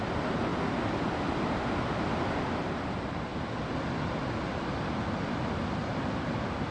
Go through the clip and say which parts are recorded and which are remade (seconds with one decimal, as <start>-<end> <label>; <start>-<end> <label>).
0.0-6.7 recorded